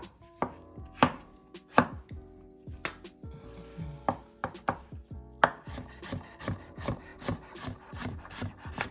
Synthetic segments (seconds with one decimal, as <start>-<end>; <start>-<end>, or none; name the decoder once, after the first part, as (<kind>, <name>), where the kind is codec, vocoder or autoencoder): 0.0-1.4 (vocoder, BigVGAN v2); 6.0-8.9